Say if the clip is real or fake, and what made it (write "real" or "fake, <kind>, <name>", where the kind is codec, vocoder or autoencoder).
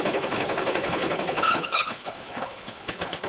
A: fake, codec, HILCodec